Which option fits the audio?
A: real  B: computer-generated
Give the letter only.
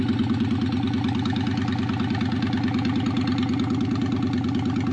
A